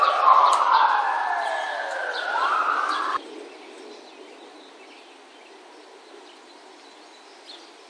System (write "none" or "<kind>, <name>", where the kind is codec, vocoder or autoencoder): none